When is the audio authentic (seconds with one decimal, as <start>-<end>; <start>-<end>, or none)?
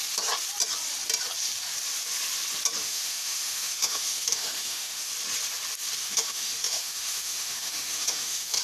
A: 0.0-2.8; 5.1-6.0